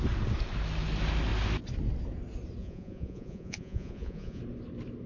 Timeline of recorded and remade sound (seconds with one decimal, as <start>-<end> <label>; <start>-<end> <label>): 0.0-2.6 recorded; 2.6-4.4 remade; 4.4-5.1 recorded